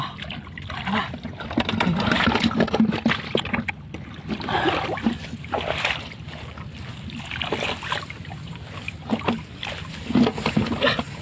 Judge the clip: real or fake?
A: real